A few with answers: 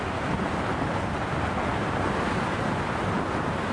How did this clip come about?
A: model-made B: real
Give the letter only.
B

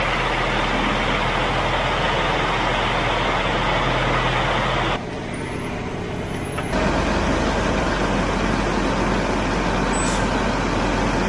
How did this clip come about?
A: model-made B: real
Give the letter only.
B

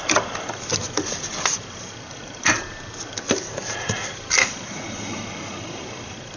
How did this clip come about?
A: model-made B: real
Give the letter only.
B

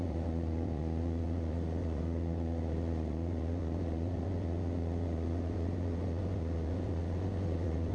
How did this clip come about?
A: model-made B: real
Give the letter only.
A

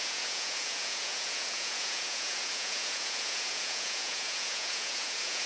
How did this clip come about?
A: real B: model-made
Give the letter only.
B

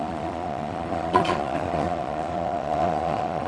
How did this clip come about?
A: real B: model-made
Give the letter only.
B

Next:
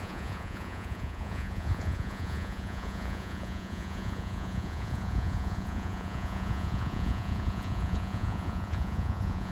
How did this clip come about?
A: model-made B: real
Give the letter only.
A